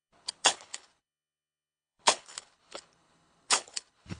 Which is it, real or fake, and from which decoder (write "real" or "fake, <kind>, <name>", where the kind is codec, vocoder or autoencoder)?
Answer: fake, codec, HILCodec